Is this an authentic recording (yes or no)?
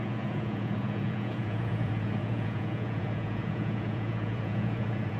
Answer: no